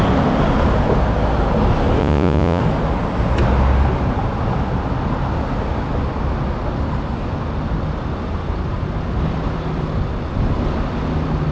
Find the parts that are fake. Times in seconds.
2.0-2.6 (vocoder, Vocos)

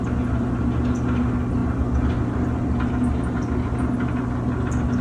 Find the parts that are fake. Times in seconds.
none

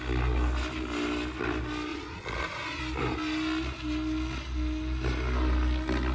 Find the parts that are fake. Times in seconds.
1.9-2.8 (vocoder, Vocos)

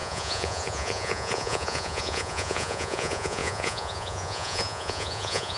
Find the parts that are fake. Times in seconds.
0.0-5.6 (vocoder, Vocos)

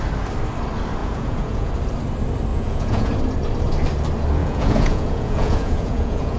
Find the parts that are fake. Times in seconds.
1.0-1.7 (vocoder, Vocos); 2.5-3.1; 4.4-6.4

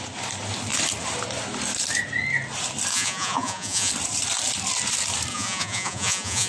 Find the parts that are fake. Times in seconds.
2.9-3.9 (vocoder, Vocos); 5.3-6.5

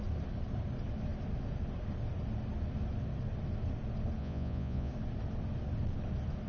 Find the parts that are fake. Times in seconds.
4.2-4.9 (vocoder, Vocos)